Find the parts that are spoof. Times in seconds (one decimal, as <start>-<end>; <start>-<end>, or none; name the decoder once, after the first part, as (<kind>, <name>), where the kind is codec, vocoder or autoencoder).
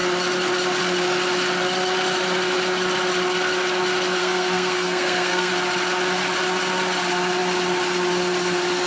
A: 4.2-5.5 (codec, SNAC)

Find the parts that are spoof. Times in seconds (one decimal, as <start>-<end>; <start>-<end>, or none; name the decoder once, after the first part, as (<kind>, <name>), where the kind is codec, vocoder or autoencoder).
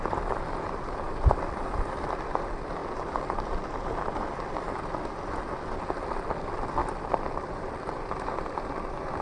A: none